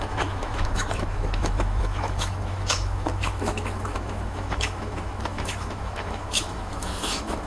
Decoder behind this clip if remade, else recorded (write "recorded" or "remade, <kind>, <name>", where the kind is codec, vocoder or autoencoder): remade, autoencoder, DAC-VAE